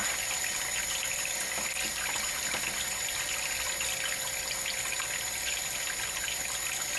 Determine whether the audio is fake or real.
real